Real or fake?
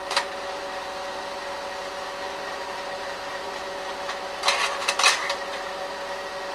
real